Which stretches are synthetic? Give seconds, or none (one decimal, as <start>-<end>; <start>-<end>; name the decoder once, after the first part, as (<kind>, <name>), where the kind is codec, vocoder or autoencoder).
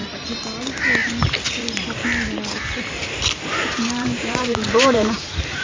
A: 3.4-5.6 (vocoder, BigVGAN v2)